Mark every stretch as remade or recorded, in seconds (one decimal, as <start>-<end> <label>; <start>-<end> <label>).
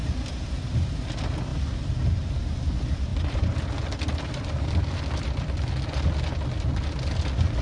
0.0-3.1 recorded; 3.1-4.8 remade; 4.8-7.6 recorded